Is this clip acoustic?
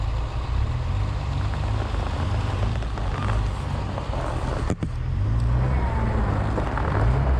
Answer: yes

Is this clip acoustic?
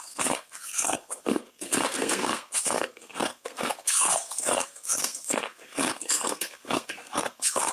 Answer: no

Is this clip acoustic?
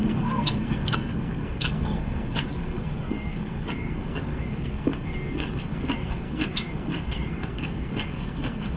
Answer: no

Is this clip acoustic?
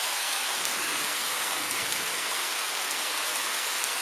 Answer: no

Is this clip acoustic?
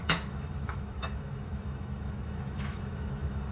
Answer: no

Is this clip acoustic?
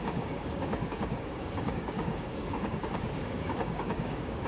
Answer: no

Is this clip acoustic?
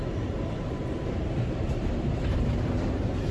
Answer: no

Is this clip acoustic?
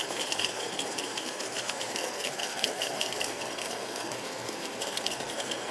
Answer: no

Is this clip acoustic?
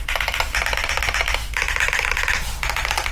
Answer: yes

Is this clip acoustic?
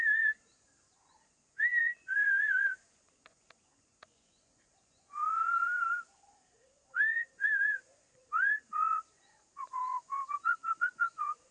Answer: no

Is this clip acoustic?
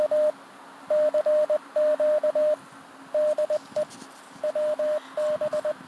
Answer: yes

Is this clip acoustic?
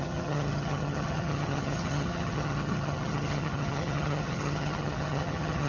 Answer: no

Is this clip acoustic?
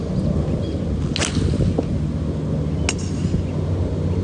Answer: yes